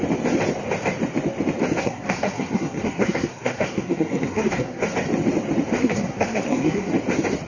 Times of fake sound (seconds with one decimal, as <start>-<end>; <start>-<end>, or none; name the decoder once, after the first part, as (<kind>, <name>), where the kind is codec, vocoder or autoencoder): 1.8-4.8 (codec, SNAC); 5.8-6.9